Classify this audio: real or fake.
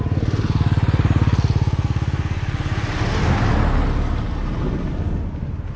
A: real